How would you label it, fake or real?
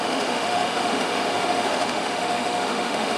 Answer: fake